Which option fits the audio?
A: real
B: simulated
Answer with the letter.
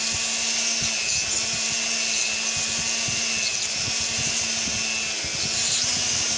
A